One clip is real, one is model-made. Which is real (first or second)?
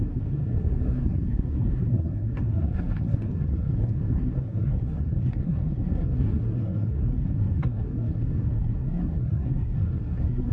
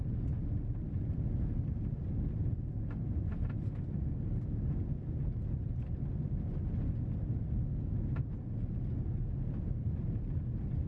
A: second